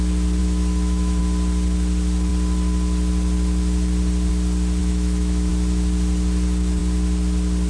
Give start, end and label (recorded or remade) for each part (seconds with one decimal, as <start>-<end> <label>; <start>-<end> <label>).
0.0-0.4 recorded; 0.4-1.2 remade; 1.2-4.8 recorded; 4.8-5.5 remade; 5.5-7.7 recorded